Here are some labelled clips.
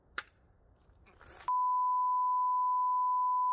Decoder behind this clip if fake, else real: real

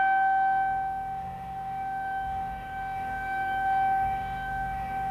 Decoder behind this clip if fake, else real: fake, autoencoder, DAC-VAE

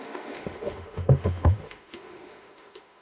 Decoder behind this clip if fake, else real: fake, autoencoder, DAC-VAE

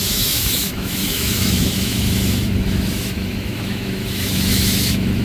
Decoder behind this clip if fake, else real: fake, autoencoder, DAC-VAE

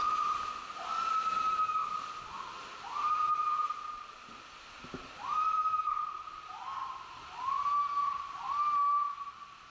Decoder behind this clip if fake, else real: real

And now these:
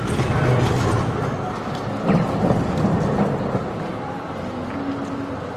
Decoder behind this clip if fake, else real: real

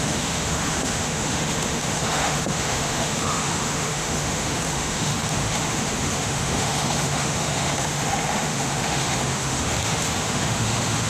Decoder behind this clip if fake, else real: fake, autoencoder, DAC-VAE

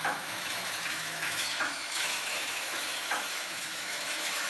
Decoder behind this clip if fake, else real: fake, autoencoder, DAC-VAE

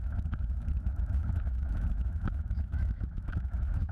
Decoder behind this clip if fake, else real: fake, autoencoder, DAC-VAE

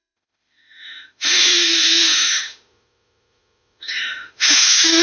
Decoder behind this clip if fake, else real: fake, autoencoder, DAC-VAE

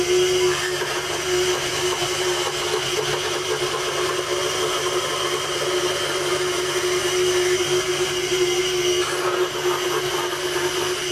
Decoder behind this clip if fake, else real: real